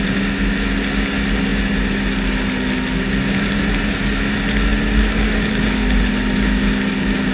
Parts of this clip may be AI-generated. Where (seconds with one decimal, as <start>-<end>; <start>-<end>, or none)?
none

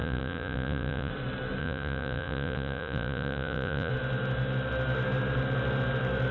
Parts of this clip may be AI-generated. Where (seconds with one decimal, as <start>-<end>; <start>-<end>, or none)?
0.0-1.1; 1.6-3.9

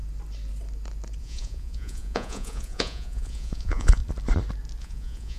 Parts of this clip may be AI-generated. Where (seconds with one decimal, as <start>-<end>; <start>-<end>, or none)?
1.2-4.0; 4.8-5.4

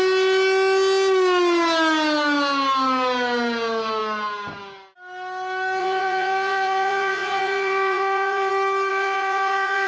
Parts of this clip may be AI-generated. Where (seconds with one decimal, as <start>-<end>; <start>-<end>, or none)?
5.8-8.5; 8.9-9.9

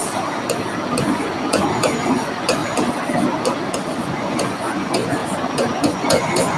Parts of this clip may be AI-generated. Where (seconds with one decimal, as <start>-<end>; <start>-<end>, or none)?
1.0-2.6; 3.9-6.6

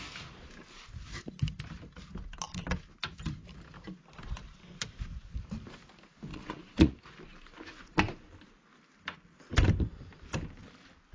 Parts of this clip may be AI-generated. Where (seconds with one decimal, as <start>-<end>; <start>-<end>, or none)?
6.3-7.0

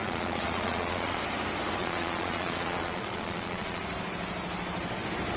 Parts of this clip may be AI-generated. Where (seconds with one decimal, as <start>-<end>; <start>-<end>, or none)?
0.0-1.2; 1.8-3.8

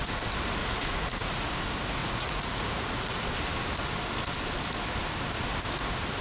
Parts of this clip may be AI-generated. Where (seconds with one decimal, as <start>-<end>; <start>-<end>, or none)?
0.6-1.5; 2.0-3.3